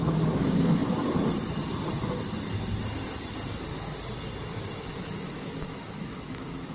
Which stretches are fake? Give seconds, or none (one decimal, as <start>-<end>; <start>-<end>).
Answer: 0.0-0.8; 4.8-6.7